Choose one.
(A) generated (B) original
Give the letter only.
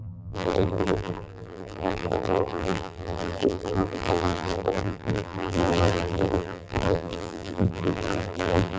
A